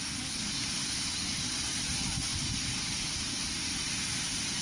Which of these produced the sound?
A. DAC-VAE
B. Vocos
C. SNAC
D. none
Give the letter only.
D